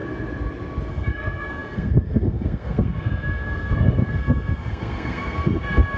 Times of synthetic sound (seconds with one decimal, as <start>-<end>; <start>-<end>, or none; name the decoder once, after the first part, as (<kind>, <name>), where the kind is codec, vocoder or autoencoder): 0.9-6.0 (codec, SNAC)